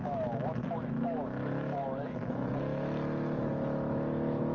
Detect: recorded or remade remade